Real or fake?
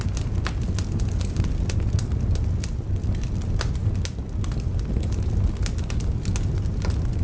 real